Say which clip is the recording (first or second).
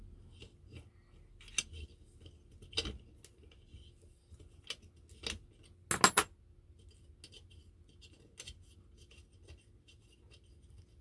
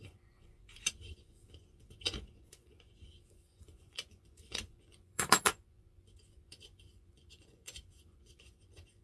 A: first